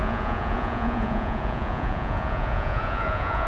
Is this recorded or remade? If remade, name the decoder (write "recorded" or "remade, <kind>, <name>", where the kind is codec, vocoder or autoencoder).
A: remade, vocoder, Vocos